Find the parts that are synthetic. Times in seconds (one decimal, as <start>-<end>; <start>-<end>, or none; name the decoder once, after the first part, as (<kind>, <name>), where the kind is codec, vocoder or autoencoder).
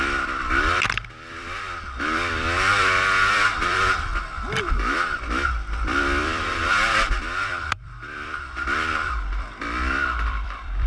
0.0-4.1 (vocoder, BigVGAN v2); 4.7-10.9